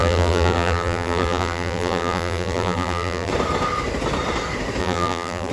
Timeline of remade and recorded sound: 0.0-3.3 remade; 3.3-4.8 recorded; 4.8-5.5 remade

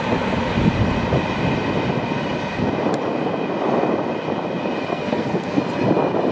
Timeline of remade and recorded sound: 0.0-4.9 recorded; 4.9-5.6 remade; 5.6-6.3 recorded

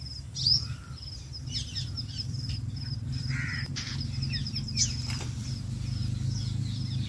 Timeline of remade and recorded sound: 0.0-0.8 recorded; 0.8-3.9 remade; 3.9-4.4 recorded; 4.4-5.5 remade; 5.5-7.1 recorded

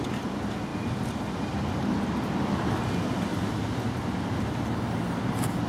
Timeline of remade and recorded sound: 0.0-5.7 recorded